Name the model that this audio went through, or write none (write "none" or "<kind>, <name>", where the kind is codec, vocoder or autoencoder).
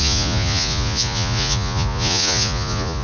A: vocoder, Vocos